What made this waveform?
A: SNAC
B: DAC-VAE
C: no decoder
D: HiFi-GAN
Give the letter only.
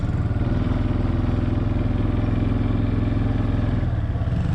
C